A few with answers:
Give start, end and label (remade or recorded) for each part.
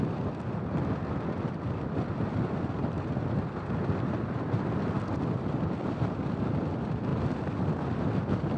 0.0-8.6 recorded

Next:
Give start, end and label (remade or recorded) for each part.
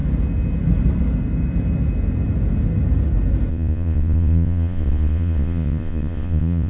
0.0-3.5 recorded; 3.5-6.7 remade